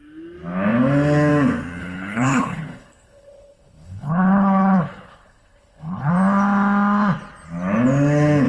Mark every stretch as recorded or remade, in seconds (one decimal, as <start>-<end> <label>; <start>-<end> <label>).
0.0-1.8 recorded; 1.8-6.1 remade; 6.1-8.5 recorded